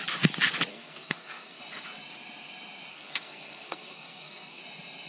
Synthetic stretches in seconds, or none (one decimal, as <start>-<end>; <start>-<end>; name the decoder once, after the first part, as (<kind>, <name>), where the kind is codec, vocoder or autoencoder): 0.7-1.6 (codec, SNAC); 2.9-4.6